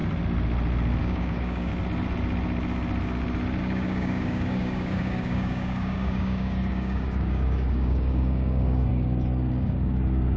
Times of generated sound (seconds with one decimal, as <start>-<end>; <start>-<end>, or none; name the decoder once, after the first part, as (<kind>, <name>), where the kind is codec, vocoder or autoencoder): 1.0-1.7 (codec, DAC); 3.6-10.4